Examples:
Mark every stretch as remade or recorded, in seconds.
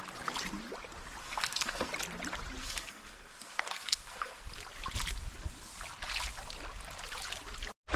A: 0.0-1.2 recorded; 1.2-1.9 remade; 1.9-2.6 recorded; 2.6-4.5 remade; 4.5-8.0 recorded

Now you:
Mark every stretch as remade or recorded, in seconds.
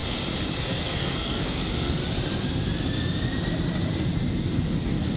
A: 0.0-0.6 recorded; 0.6-2.0 remade; 2.0-4.4 recorded; 4.4-5.2 remade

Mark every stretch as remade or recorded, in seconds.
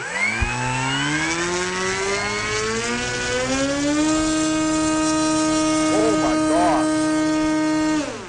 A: 0.0-8.3 recorded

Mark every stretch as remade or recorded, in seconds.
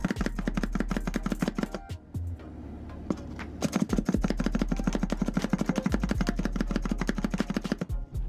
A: 0.0-8.3 recorded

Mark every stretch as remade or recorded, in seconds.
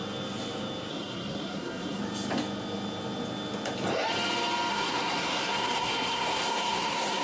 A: 0.0-0.9 recorded; 0.9-2.0 remade; 2.0-4.7 recorded; 4.7-7.2 remade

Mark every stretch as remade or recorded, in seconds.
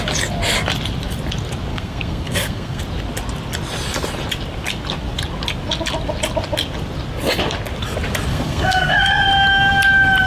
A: 0.0-1.7 recorded; 1.7-2.8 remade; 2.8-8.3 recorded; 8.3-9.1 remade; 9.1-10.3 recorded